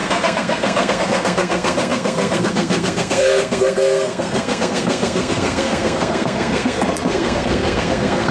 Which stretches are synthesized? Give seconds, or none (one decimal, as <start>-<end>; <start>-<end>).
0.0-8.3